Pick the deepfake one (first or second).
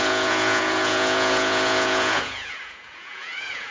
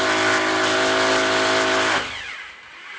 first